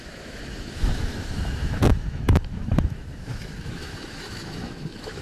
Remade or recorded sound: remade